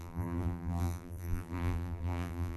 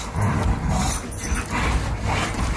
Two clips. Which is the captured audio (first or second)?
second